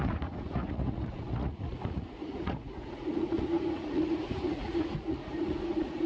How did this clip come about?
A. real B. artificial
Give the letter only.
B